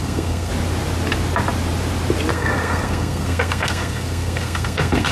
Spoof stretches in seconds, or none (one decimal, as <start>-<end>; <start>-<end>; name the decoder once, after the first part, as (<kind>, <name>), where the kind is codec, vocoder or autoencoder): 0.0-0.5 (codec, SNAC); 2.3-5.1